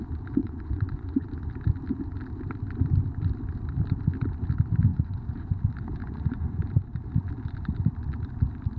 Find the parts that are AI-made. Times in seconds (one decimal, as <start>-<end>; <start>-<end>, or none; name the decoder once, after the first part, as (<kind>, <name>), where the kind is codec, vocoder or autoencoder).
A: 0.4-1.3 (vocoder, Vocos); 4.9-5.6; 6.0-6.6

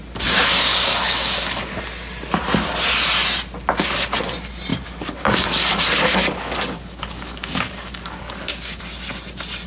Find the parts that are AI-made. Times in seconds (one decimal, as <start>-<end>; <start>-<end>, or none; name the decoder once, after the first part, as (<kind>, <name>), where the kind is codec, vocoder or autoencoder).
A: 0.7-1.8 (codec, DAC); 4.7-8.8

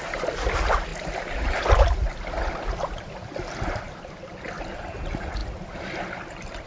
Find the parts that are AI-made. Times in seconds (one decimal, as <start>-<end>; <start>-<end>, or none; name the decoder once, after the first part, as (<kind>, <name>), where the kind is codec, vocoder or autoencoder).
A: none

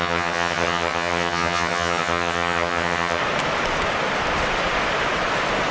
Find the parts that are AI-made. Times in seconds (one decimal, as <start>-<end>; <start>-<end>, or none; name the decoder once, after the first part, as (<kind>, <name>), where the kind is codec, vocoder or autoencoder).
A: 0.0-3.2 (vocoder, HiFi-GAN)

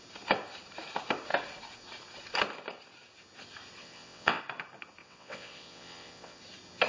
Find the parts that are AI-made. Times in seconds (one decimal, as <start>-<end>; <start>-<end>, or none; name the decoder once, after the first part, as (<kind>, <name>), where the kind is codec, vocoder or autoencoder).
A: 3.8-4.4 (vocoder, WaveNeXt); 5.0-6.4

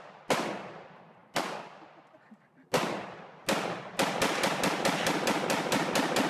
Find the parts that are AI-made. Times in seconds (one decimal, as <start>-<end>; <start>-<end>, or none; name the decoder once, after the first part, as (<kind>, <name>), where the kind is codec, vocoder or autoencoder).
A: none